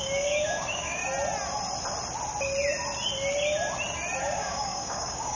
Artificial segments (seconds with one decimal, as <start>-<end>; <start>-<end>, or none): 0.0-1.0; 4.2-5.4